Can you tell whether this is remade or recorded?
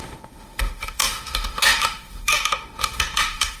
remade